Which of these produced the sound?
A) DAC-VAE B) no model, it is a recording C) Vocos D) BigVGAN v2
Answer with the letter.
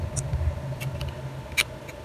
B